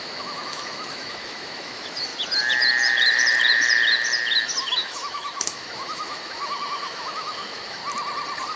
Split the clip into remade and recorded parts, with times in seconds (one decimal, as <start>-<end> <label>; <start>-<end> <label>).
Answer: 0.0-2.1 remade; 2.1-4.6 recorded; 4.6-7.8 remade; 7.8-8.6 recorded